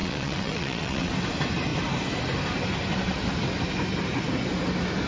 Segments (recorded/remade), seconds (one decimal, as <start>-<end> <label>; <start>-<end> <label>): 0.0-1.1 remade; 1.1-5.1 recorded